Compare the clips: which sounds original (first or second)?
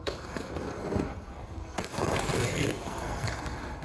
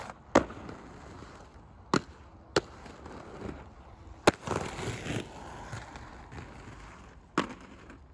second